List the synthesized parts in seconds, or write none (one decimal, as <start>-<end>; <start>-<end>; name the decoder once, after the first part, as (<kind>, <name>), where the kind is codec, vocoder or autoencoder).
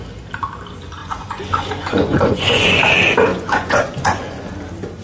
1.0-2.8 (vocoder, Vocos); 3.3-4.5